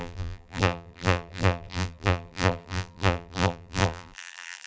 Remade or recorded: remade